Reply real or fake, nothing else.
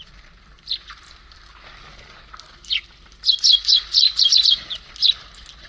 real